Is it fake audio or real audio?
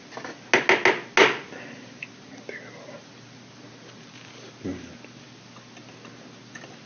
real